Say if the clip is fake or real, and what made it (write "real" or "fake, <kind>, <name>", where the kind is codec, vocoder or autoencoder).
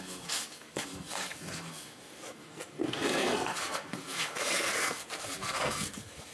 fake, codec, SNAC